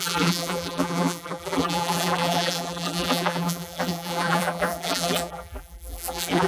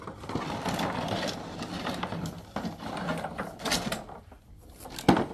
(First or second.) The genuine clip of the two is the second